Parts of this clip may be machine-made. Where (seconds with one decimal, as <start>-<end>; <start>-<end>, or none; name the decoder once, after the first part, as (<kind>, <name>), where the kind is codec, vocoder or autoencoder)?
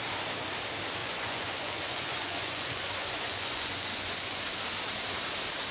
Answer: 1.0-4.4 (vocoder, Vocos)